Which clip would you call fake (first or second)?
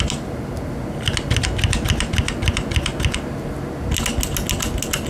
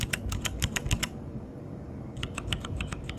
second